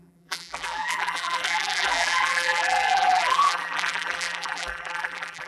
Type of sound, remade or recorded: remade